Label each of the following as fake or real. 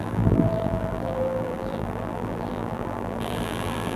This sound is fake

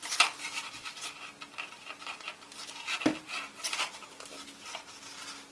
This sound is real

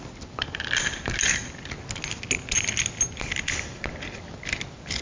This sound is real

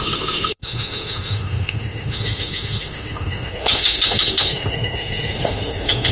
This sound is fake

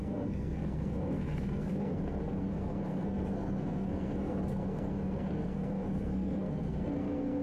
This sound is fake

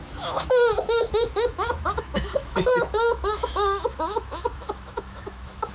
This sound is fake